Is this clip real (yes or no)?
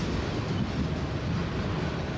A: yes